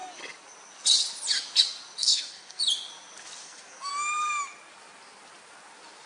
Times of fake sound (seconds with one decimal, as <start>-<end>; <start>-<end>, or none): 2.0-2.6; 3.4-3.9